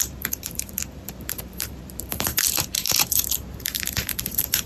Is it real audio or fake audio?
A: fake